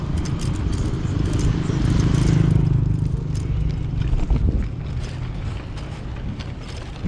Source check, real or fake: real